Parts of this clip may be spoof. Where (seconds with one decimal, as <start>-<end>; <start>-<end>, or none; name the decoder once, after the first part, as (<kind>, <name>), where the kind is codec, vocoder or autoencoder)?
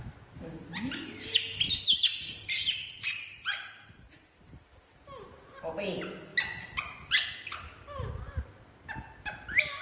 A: 2.1-3.9 (vocoder, BigVGAN v2)